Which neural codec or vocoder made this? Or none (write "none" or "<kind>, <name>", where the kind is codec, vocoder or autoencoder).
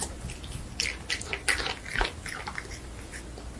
none